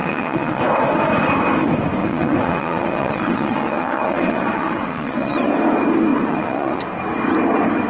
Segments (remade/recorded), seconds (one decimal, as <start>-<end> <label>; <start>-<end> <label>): 0.0-0.6 remade; 0.6-2.0 recorded; 2.0-5.5 remade; 5.5-6.1 recorded; 6.1-6.8 remade; 6.8-7.9 recorded